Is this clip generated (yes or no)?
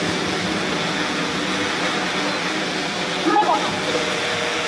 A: no